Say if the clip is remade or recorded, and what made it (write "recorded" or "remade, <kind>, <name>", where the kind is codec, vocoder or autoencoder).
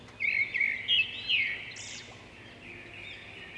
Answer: recorded